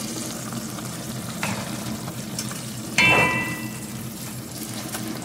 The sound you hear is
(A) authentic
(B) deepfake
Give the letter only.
B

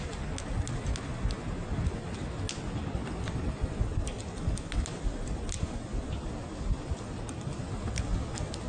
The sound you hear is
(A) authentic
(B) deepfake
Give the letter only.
A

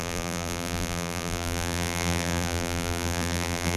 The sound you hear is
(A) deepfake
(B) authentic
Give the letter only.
A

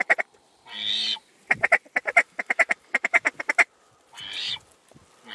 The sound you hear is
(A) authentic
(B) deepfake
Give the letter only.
A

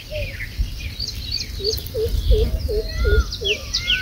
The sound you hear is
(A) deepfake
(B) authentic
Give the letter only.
B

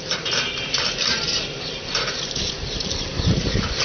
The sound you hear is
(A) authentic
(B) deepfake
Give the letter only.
B